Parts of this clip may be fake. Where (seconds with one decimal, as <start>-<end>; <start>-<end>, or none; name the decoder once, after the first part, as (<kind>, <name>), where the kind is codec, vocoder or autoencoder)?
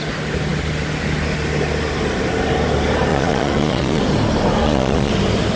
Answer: 3.1-4.0 (vocoder, Vocos); 4.6-5.1